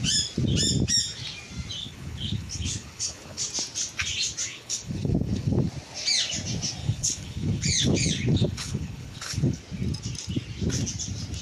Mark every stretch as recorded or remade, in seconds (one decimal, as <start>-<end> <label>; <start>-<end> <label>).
0.0-1.8 recorded; 1.8-3.4 remade; 3.4-4.5 recorded; 4.5-5.7 remade; 5.7-6.8 recorded; 6.8-9.6 remade; 9.6-11.4 recorded